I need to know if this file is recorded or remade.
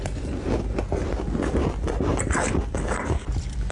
remade